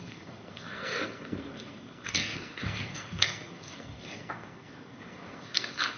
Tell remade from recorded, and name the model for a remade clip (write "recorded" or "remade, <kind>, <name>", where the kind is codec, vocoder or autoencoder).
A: remade, codec, SNAC